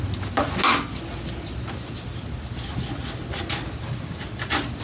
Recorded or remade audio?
recorded